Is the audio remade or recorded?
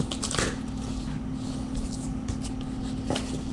recorded